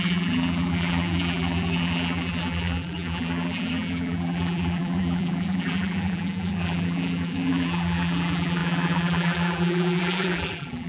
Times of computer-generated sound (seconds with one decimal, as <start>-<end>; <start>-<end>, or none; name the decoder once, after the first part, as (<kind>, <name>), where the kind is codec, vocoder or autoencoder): 0.0-10.9 (vocoder, BigVGAN v2)